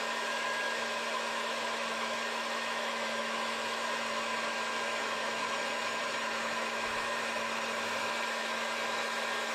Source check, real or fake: fake